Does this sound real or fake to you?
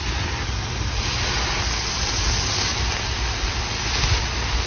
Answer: real